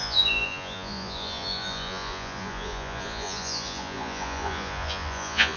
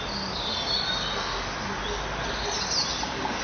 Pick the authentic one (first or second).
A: second